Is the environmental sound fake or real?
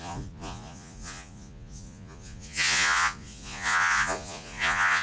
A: fake